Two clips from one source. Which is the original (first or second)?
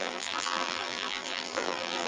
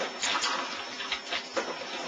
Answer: second